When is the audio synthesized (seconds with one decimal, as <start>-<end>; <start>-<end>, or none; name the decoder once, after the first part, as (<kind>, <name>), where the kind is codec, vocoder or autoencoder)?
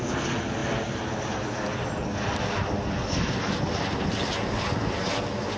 none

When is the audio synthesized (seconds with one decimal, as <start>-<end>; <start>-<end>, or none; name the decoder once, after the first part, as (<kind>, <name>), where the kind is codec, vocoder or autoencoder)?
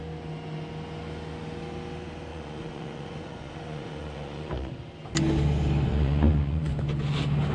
2.3-4.7 (vocoder, Vocos); 5.9-6.7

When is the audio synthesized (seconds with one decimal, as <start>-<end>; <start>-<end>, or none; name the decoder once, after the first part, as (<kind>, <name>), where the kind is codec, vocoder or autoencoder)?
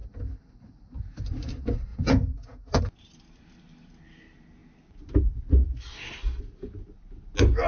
1.9-2.8 (vocoder, Vocos)